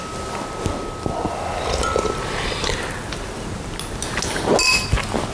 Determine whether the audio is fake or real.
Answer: real